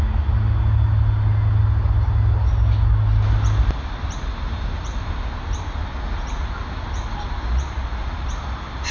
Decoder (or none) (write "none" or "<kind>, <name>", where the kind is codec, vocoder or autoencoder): none